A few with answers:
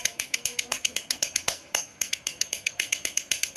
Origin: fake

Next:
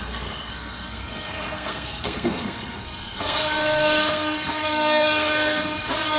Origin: fake